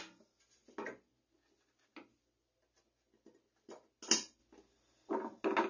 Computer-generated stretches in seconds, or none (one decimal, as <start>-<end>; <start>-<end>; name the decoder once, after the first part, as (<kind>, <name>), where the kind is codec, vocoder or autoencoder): none

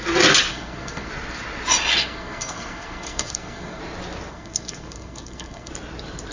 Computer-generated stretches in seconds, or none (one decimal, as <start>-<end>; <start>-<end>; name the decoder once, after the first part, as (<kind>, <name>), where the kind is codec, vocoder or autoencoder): 0.5-1.1 (codec, SNAC); 2.0-3.8; 4.3-5.7

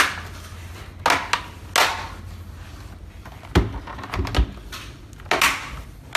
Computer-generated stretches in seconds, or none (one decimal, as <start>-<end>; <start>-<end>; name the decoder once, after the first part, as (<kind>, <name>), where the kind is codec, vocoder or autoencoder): none

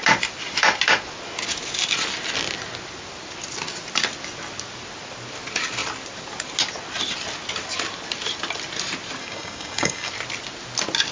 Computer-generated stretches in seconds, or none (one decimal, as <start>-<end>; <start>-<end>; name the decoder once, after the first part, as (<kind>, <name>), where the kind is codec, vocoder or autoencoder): 9.2-10.1 (codec, DAC)

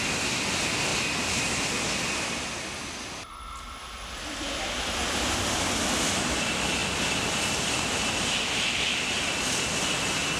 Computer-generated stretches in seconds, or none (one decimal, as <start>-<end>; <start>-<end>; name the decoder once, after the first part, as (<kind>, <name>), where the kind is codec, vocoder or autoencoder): none

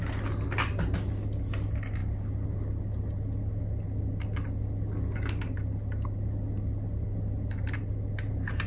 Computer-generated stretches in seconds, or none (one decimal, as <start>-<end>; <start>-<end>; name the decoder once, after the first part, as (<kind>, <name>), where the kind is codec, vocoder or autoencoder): none

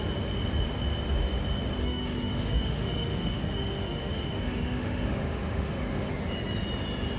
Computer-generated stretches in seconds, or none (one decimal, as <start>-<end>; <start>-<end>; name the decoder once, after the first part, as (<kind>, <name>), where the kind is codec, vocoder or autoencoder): 1.8-6.1 (autoencoder, DAC-VAE)

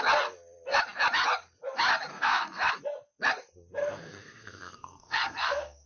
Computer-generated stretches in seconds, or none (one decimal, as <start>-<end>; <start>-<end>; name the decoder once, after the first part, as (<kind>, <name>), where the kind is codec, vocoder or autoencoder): 2.1-2.7 (codec, SNAC); 3.8-5.9